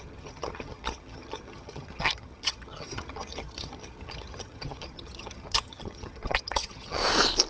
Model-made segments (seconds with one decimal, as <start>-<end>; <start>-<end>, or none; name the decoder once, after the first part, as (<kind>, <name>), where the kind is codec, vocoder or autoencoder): 0.0-7.0 (vocoder, HiFi-GAN)